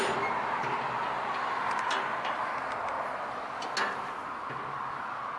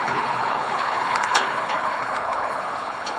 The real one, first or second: first